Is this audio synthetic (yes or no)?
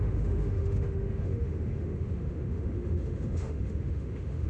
yes